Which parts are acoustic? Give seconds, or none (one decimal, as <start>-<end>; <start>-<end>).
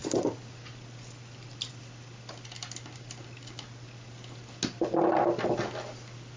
0.0-6.4